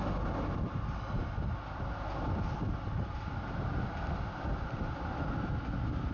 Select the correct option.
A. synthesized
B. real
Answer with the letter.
B